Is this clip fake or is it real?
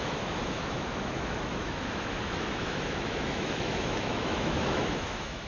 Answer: fake